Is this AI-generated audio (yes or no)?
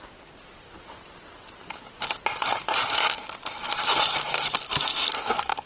no